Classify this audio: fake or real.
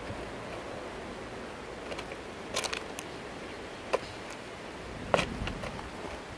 real